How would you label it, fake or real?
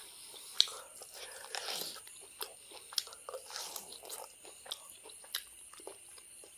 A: fake